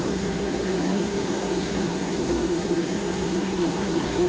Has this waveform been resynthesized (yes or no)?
yes